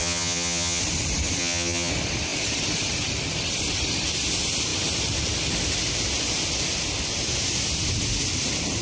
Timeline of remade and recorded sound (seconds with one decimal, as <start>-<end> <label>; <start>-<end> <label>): 0.0-0.8 remade; 0.8-1.4 recorded; 1.4-1.9 remade; 1.9-8.8 recorded

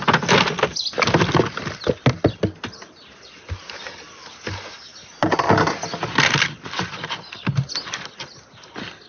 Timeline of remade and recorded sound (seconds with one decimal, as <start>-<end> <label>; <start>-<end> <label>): 0.0-9.1 recorded

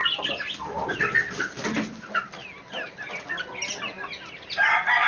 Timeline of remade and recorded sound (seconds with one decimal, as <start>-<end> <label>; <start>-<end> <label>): 0.0-5.1 recorded

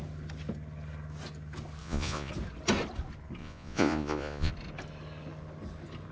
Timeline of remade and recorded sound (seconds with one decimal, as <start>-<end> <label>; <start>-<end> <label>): 0.0-1.8 recorded; 1.8-2.3 remade; 2.3-3.4 recorded; 3.4-4.5 remade; 4.5-6.1 recorded